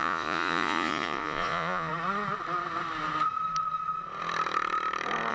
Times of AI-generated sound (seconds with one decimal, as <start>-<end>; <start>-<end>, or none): 0.0-1.9